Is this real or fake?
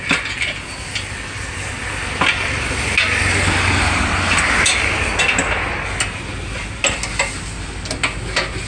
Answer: real